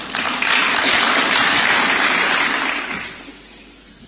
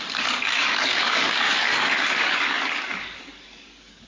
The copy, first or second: second